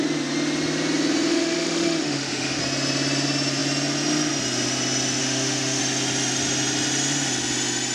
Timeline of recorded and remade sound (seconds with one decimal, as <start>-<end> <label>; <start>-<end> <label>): 0.0-1.3 recorded; 1.3-2.6 remade; 2.6-5.2 recorded; 5.2-5.8 remade; 5.8-7.9 recorded

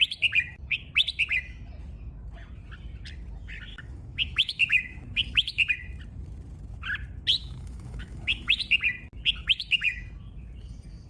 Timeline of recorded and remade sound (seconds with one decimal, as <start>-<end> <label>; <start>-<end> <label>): 0.0-3.7 recorded; 3.7-5.7 remade; 5.7-7.4 recorded; 7.4-8.6 remade; 8.6-9.4 recorded; 9.4-10.0 remade; 10.0-11.1 recorded

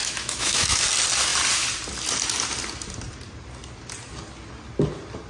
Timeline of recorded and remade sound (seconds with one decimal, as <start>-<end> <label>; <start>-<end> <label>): 0.0-0.8 remade; 0.8-5.3 recorded

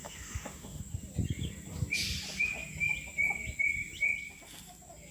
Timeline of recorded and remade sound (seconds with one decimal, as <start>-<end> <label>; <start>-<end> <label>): 0.0-0.8 remade; 0.8-5.1 recorded

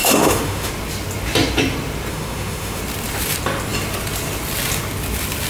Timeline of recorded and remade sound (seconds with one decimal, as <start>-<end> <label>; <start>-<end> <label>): 0.0-0.7 remade; 0.7-2.1 recorded; 2.1-2.8 remade; 2.8-5.5 recorded

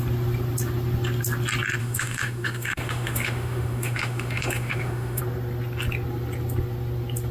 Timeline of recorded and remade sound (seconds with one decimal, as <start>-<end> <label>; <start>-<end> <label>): 0.0-1.8 recorded; 1.8-5.2 remade; 5.2-7.3 recorded

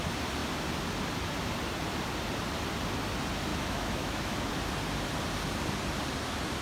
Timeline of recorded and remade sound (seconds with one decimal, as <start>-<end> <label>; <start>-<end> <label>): 0.0-3.5 recorded; 3.5-4.5 remade; 4.5-6.6 recorded